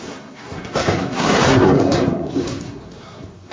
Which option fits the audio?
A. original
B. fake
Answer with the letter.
B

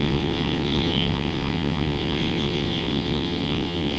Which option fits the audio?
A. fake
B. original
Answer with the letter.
A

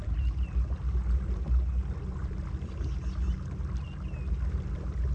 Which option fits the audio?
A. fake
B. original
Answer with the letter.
B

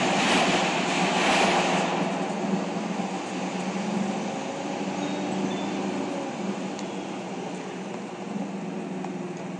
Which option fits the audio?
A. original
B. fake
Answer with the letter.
A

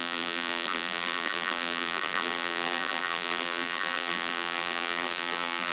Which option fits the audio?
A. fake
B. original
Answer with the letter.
A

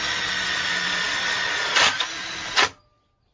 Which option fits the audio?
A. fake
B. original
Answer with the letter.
B